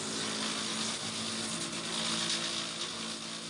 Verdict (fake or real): real